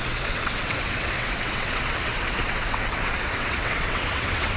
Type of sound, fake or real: fake